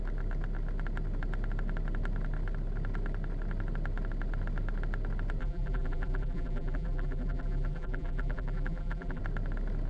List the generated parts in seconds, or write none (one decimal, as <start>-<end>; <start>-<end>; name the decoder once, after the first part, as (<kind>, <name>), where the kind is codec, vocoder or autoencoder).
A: 5.4-9.2 (vocoder, BigVGAN v2)